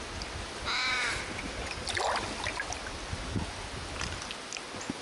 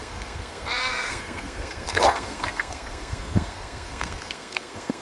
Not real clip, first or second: second